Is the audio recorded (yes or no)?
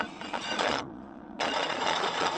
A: no